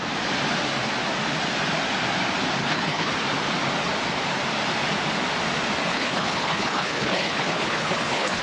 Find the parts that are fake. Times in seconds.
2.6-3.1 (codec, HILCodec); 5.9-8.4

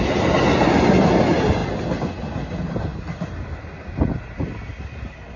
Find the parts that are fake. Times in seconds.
none

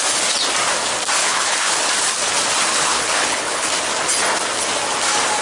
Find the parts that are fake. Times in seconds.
1.2-1.9 (codec, HILCodec); 2.7-3.7

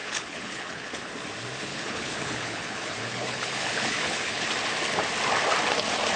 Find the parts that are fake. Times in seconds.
0.0-1.0 (codec, HILCodec); 1.7-4.5

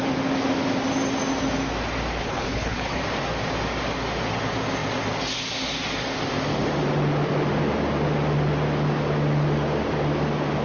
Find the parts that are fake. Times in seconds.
2.2-3.0 (codec, HILCodec)

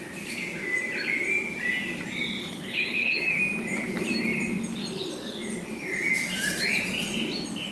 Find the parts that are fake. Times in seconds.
2.4-3.2 (codec, HILCodec)

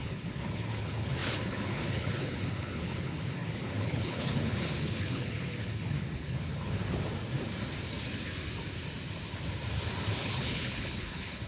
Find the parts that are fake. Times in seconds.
0.0-6.8 (codec, HILCodec); 10.1-11.5

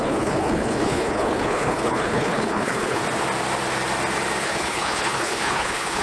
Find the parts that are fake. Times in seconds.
0.0-3.0 (codec, HILCodec); 4.4-6.0